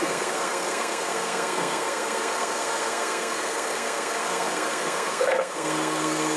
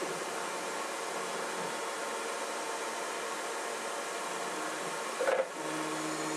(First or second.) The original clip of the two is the second